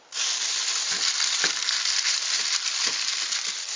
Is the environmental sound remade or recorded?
recorded